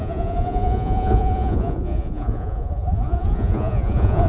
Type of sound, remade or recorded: remade